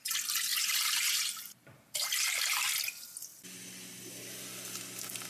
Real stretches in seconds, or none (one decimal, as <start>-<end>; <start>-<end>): 0.0-0.5; 2.7-5.3